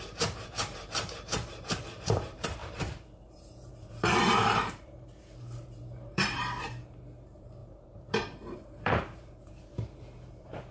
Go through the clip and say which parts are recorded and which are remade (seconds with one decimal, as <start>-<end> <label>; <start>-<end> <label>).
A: 0.0-10.7 remade